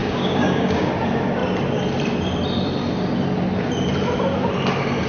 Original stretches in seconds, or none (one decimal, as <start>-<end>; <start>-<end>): 0.9-5.1